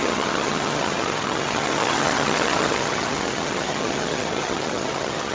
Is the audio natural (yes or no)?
no